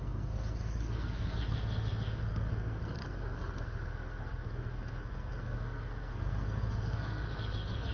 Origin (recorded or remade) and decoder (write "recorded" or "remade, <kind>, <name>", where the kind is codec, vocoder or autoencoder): remade, codec, SNAC